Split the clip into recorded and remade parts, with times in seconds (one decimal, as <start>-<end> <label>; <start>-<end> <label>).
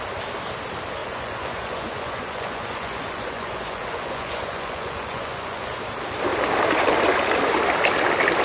0.0-1.0 recorded; 1.0-5.8 remade; 5.8-8.4 recorded